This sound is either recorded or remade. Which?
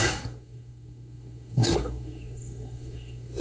remade